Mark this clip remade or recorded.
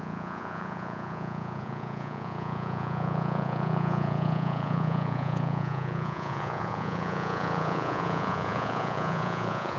remade